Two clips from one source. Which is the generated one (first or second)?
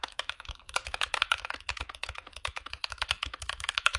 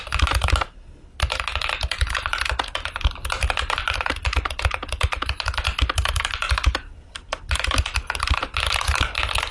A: first